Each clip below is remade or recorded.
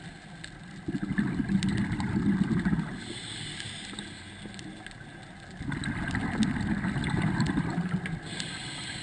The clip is recorded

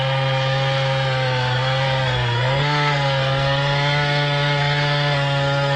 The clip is remade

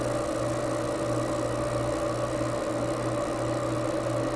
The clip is recorded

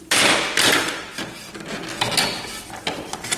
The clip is recorded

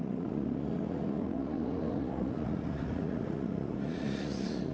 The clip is remade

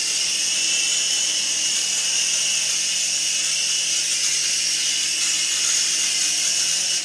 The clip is recorded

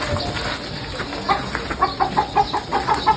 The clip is recorded